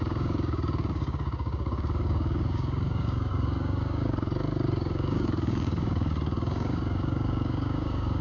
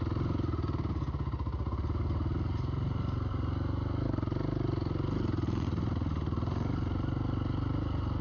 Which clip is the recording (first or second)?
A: second